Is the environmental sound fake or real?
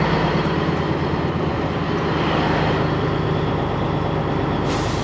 real